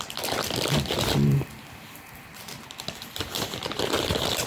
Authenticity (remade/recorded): remade